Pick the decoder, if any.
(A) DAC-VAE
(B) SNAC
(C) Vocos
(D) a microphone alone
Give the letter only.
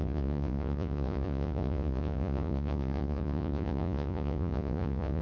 C